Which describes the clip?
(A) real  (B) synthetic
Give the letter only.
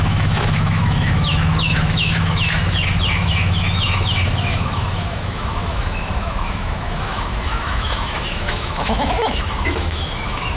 B